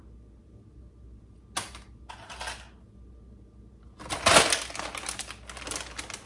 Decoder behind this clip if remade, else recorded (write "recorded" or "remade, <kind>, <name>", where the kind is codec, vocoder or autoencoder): recorded